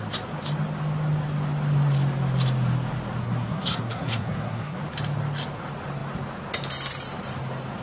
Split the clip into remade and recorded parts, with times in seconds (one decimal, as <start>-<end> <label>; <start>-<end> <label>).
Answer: 0.0-3.2 recorded; 3.2-4.8 remade; 4.8-7.8 recorded